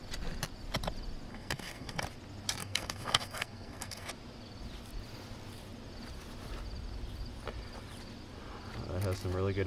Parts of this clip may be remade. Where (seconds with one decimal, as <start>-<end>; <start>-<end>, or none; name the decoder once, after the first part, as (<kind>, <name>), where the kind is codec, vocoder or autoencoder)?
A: 1.3-2.0 (codec, SNAC); 2.6-4.1